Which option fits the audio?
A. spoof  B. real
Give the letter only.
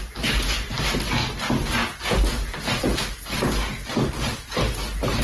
B